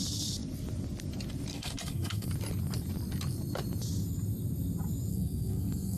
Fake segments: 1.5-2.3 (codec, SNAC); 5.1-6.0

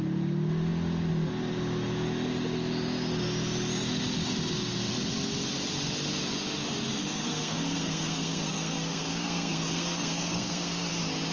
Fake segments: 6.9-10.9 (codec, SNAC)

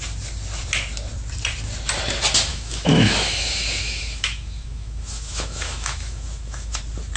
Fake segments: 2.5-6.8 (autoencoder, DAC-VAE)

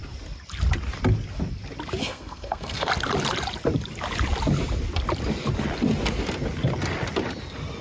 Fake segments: 2.0-2.9 (codec, SNAC)